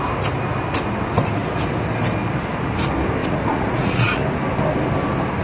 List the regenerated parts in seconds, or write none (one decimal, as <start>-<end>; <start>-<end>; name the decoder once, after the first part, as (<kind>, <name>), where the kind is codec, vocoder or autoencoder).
3.2-4.2 (vocoder, Vocos)